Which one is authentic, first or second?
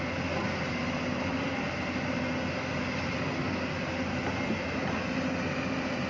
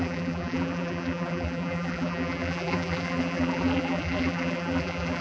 first